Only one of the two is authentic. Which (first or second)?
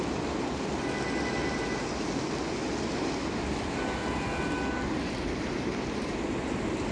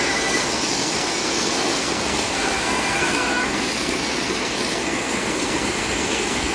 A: first